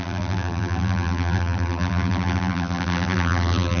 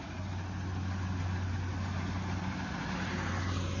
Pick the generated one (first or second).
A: first